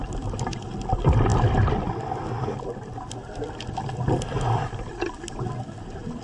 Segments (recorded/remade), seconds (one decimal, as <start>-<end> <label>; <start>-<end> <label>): 0.0-6.2 recorded